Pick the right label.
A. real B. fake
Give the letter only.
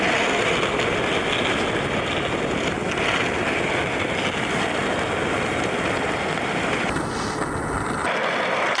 A